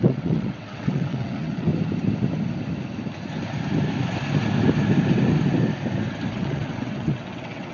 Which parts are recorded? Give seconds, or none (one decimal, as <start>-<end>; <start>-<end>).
1.7-6.3